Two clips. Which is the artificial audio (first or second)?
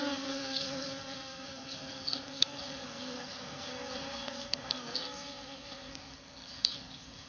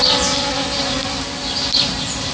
first